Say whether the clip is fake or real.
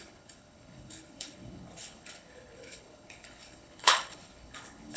fake